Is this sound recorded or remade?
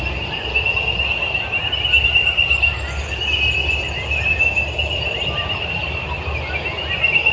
recorded